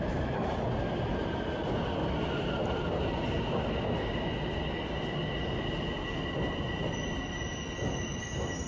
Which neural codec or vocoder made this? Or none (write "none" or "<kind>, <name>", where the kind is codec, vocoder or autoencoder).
none